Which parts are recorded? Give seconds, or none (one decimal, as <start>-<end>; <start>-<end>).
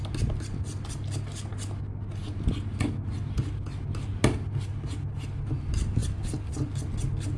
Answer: 0.0-7.4